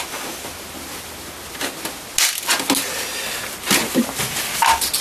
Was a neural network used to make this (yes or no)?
no